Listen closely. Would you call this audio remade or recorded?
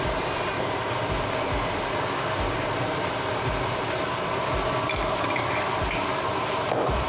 recorded